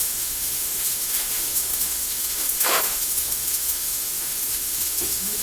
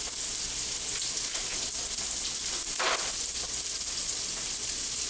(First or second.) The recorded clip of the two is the second